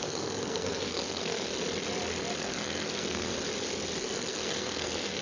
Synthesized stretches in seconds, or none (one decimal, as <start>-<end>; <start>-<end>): 0.0-1.5; 2.4-3.3; 4.0-5.2